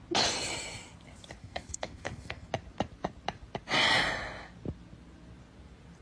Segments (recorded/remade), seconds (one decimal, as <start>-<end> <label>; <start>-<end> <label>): 0.0-1.4 recorded; 1.4-2.5 remade; 2.5-6.0 recorded